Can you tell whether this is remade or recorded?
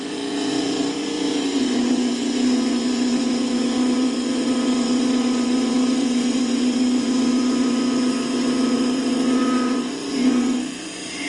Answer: remade